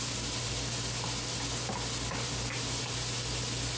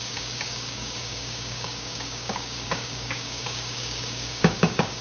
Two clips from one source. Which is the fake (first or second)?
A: second